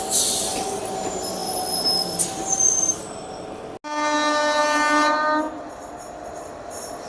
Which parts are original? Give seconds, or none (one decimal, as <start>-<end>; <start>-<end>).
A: 0.0-7.1